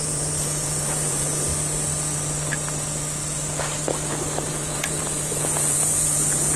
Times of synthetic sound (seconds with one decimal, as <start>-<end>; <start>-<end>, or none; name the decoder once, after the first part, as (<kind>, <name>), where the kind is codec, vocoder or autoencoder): 0.0-1.5 (vocoder, Vocos); 4.5-6.6